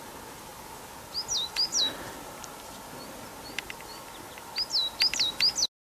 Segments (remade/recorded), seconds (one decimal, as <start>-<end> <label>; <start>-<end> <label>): 0.0-5.9 recorded